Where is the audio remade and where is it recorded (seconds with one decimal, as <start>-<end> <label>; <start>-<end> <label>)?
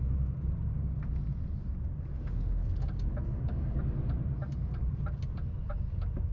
0.0-2.6 recorded; 2.6-3.8 remade; 3.8-6.3 recorded